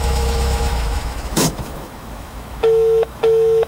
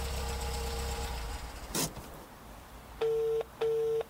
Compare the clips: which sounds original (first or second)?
second